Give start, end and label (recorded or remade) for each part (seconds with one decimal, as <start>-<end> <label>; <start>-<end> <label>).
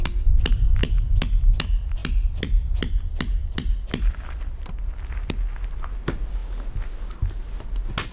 0.0-2.0 recorded; 2.0-2.7 remade; 2.7-3.4 recorded; 3.4-4.3 remade; 4.3-8.1 recorded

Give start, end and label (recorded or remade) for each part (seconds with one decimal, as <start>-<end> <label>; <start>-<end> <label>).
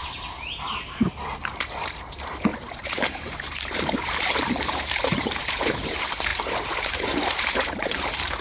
0.0-1.5 recorded; 1.5-8.4 remade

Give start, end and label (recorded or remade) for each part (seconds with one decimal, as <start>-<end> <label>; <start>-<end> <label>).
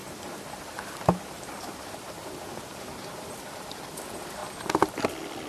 0.0-3.3 remade; 3.3-5.5 recorded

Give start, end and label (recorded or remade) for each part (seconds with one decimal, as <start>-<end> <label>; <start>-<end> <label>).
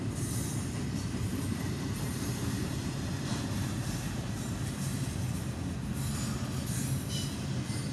0.0-1.3 recorded; 1.3-5.0 remade; 5.0-7.9 recorded